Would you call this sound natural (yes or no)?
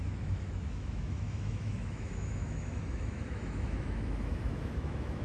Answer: no